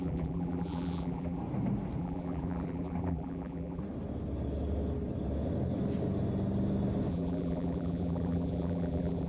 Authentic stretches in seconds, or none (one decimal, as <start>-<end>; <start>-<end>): 1.4-2.0; 3.8-7.1

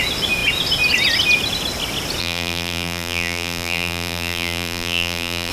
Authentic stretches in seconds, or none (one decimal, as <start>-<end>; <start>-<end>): 0.0-2.2

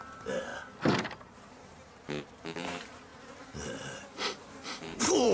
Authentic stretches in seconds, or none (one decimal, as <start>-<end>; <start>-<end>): 0.5-1.2; 3.1-4.4

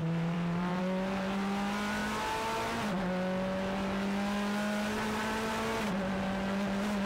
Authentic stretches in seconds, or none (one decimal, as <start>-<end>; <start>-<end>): 0.8-7.1